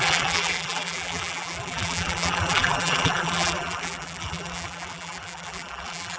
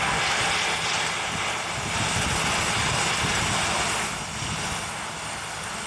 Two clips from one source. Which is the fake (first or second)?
first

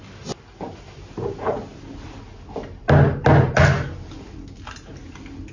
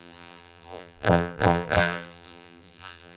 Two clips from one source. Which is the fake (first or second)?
second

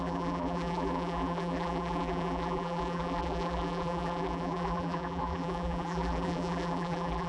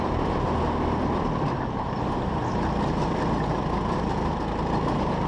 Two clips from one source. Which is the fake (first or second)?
first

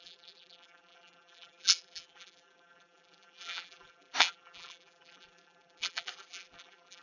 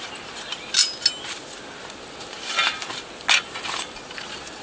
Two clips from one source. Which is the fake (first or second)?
first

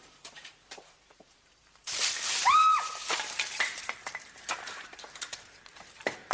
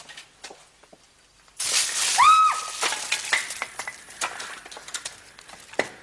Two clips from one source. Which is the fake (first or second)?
first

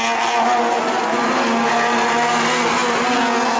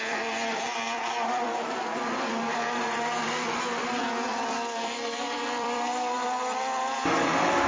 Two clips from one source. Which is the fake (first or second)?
second